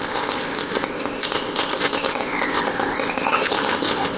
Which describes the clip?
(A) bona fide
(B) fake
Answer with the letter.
B